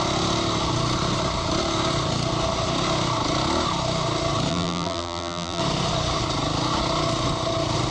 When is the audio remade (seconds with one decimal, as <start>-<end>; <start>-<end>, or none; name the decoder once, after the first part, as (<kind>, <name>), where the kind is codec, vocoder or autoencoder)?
4.5-5.6 (vocoder, BigVGAN v2)